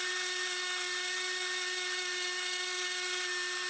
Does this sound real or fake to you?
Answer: real